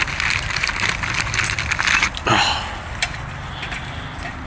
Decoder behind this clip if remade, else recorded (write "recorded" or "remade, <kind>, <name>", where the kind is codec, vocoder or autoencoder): recorded